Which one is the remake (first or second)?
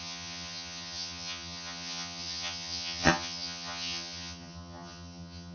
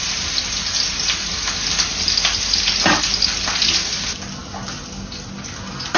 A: first